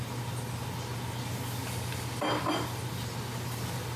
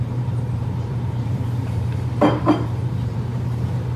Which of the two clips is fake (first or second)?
second